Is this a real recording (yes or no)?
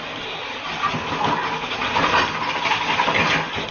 yes